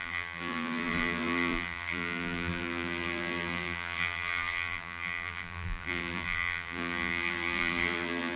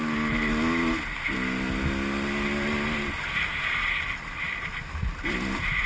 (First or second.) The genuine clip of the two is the second